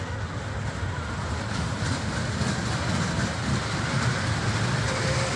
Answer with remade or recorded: remade